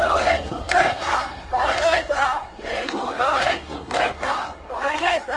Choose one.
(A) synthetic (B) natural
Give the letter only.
A